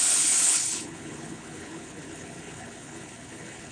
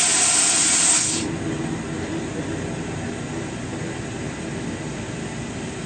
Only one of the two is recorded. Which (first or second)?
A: second